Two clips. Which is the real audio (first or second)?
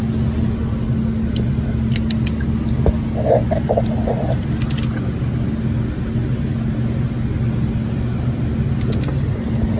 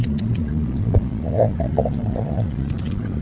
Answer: first